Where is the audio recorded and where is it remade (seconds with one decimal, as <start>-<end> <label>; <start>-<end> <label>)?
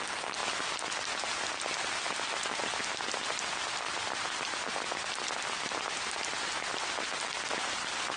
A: 0.0-8.2 recorded